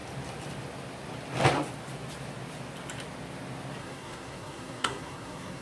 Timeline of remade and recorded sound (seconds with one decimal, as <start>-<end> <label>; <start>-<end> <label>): 0.0-3.8 recorded; 3.8-5.6 remade